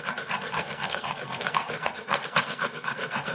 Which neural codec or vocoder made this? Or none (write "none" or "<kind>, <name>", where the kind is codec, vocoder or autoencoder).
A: codec, SNAC